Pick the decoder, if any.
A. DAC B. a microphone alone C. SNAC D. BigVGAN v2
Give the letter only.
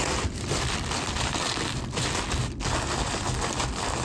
D